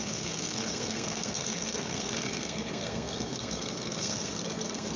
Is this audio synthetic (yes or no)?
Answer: yes